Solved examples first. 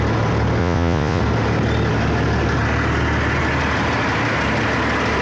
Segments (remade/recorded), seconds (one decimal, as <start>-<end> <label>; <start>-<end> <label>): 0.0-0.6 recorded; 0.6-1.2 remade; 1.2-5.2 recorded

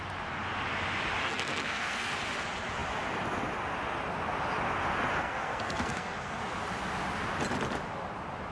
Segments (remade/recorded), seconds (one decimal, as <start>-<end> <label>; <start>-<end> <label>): 0.0-1.2 recorded; 1.2-2.1 remade; 2.1-5.2 recorded; 5.2-6.4 remade; 6.4-8.5 recorded

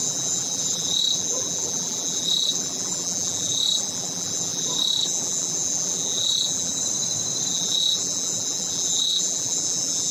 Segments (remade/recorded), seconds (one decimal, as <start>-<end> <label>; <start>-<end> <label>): 0.0-6.8 remade; 6.8-7.5 recorded; 7.5-10.1 remade